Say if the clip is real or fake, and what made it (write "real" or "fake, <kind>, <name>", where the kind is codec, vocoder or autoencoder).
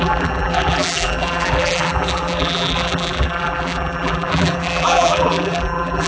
fake, vocoder, BigVGAN v2